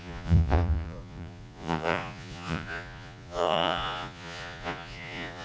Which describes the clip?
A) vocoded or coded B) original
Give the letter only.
A